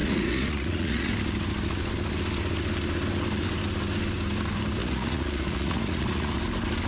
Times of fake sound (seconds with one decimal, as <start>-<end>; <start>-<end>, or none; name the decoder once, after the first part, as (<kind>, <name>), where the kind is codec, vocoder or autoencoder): 0.0-1.1 (vocoder, Vocos); 4.8-6.3